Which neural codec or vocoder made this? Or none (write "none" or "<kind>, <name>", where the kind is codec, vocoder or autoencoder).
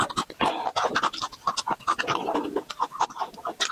none